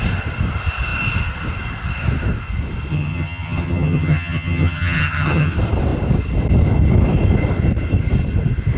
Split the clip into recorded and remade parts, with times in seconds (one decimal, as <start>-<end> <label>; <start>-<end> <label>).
0.0-2.9 recorded; 2.9-5.5 remade; 5.5-8.8 recorded